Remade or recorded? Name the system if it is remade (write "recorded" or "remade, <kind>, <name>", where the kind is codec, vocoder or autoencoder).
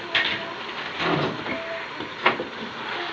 recorded